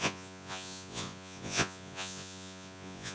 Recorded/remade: remade